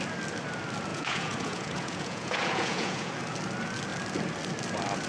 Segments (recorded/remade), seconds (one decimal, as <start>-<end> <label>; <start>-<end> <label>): 0.0-0.9 recorded; 0.9-3.1 remade; 3.1-5.1 recorded